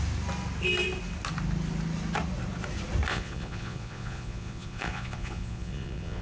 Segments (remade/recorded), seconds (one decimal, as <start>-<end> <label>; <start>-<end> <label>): 0.0-3.1 recorded; 3.1-6.2 remade